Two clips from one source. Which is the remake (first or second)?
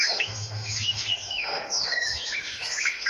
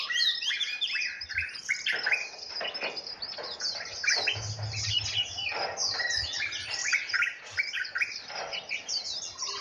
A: first